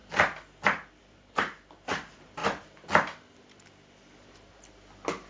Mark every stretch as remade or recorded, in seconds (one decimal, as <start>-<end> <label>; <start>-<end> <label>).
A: 0.0-5.3 recorded